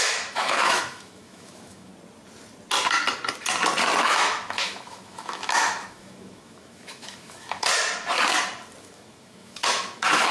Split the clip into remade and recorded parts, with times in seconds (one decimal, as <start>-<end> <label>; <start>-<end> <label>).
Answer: 0.0-1.9 remade; 1.9-4.0 recorded; 4.0-7.7 remade; 7.7-8.8 recorded; 8.8-10.3 remade